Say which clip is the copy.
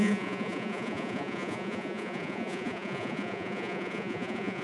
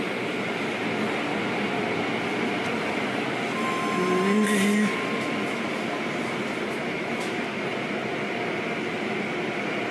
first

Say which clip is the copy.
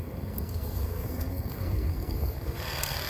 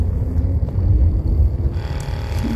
first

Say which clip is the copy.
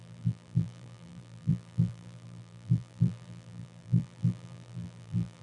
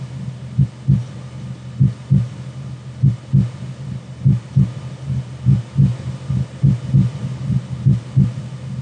first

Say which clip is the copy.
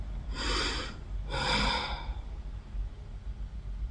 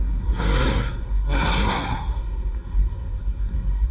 second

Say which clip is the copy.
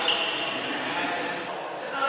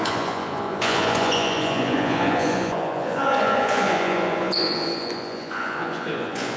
second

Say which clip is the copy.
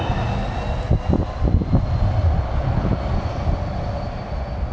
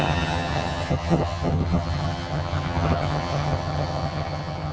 second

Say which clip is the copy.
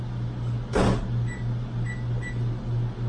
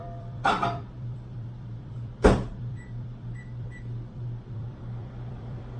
second